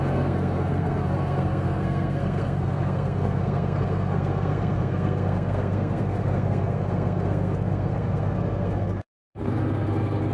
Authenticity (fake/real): fake